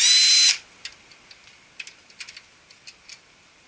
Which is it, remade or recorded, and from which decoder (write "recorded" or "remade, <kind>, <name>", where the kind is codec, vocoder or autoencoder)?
recorded